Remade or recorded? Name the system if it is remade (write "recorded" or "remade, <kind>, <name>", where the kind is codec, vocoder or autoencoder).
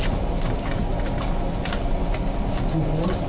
recorded